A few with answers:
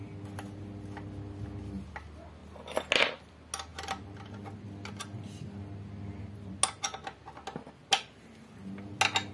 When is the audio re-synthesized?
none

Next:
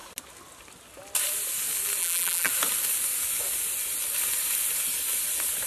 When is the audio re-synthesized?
2.0-2.5 (vocoder, BigVGAN v2)

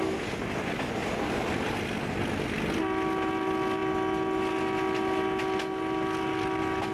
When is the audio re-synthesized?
none

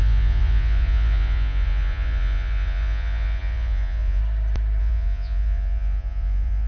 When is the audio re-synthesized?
0.0-4.2 (vocoder, Vocos); 4.8-6.7

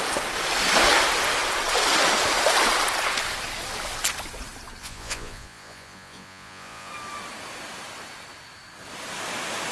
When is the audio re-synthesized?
4.8-6.9 (vocoder, Vocos)

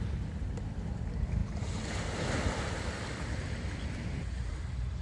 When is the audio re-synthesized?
none